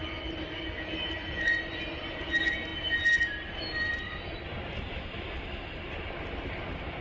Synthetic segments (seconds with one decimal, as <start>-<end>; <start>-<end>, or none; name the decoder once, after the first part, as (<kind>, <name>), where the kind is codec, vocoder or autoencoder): none